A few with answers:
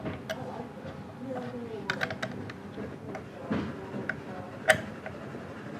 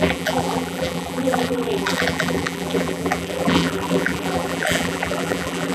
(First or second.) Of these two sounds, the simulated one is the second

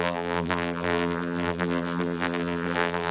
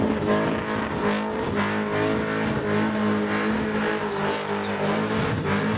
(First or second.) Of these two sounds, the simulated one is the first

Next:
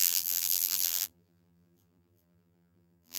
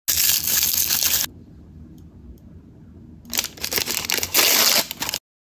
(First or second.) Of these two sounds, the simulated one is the first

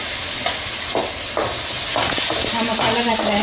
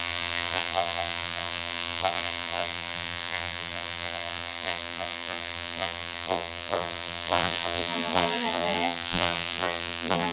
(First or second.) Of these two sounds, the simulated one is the second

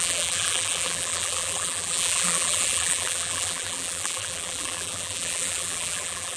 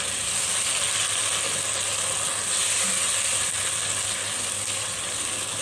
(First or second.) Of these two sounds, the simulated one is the first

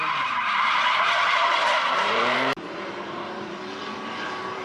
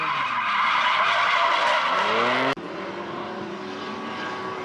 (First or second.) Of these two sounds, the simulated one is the first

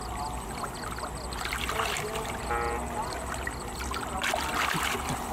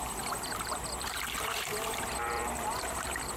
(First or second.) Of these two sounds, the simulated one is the second